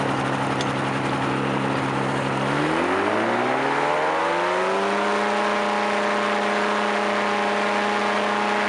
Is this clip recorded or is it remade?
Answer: recorded